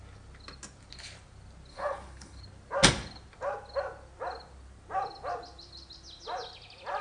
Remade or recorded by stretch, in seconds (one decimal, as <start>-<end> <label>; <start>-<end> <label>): 0.0-1.7 recorded; 1.7-2.4 remade; 2.4-7.0 recorded